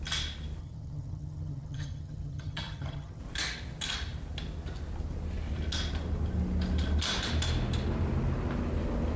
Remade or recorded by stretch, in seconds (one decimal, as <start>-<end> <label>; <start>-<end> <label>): 0.0-0.6 recorded; 0.6-3.2 remade; 3.2-9.2 recorded